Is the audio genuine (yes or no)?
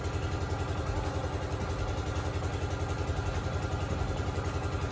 yes